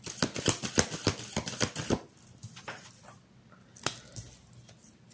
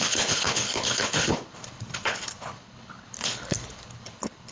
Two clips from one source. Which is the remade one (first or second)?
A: second